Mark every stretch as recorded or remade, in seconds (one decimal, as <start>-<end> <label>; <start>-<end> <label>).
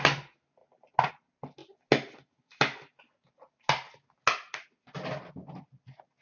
0.0-6.2 recorded